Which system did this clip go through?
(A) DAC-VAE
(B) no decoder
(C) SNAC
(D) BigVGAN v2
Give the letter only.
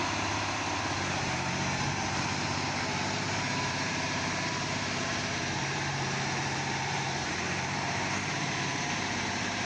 D